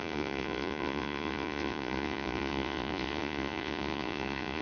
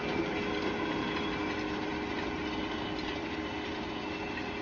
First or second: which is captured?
second